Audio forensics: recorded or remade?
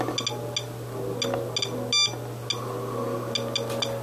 recorded